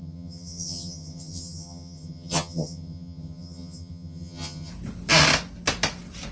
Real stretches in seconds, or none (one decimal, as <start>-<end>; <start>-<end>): 4.7-6.3

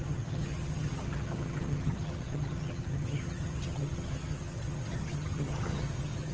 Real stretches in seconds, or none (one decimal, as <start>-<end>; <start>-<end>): none